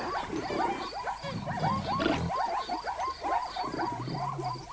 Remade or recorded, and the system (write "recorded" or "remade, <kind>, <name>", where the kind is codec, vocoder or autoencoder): recorded